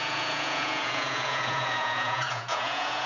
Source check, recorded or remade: remade